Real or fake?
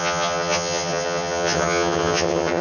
fake